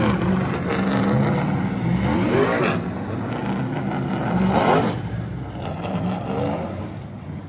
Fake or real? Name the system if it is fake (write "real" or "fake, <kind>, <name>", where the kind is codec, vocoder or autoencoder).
real